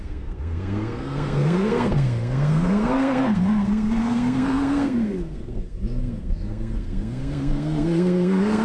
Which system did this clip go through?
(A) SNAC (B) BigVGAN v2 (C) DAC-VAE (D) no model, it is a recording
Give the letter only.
A